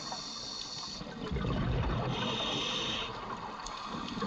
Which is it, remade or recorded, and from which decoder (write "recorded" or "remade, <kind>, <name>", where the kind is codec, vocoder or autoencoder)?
recorded